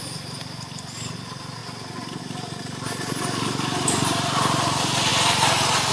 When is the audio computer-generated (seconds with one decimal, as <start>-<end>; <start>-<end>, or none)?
none